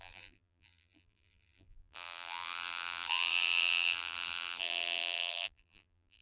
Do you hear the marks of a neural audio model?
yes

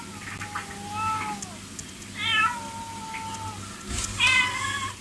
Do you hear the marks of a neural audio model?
no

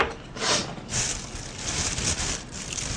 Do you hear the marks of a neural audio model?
no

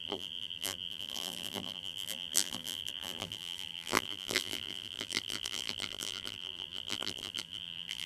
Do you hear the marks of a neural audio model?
yes